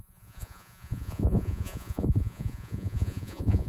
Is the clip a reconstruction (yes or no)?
yes